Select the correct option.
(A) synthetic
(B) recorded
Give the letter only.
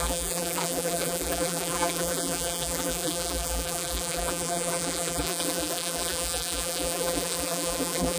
A